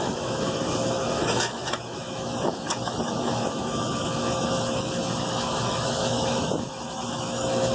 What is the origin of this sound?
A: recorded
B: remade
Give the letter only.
B